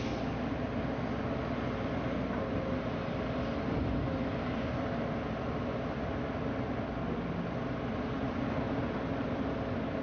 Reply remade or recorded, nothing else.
recorded